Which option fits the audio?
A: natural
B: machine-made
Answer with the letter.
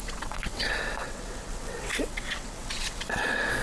B